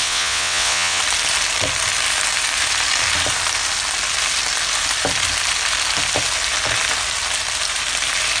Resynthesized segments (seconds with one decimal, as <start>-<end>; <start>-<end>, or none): 0.0-1.0